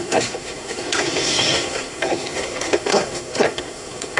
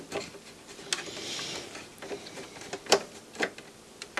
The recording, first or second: second